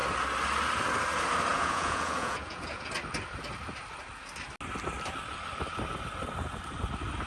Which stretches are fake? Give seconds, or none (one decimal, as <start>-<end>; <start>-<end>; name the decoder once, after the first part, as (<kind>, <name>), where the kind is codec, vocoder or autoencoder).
1.5-2.9 (vocoder, Vocos)